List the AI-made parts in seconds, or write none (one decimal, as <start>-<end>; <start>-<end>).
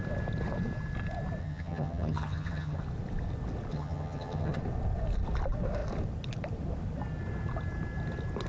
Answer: 1.4-2.8; 3.7-4.6